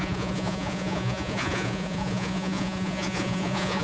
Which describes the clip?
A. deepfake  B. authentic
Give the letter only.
A